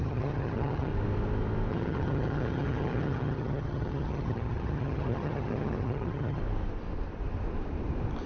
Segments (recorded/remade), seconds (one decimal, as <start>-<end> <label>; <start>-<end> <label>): 0.0-0.9 remade; 0.9-1.7 recorded; 1.7-6.4 remade; 6.4-8.3 recorded